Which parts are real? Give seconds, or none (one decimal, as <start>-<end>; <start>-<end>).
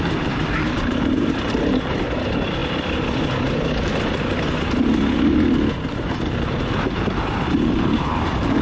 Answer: 2.6-5.7